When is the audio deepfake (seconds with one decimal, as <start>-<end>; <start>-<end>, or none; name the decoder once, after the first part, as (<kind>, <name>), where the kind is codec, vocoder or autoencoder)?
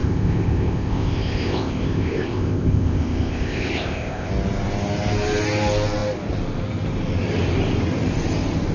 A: 0.0-4.3 (codec, ZipCodec)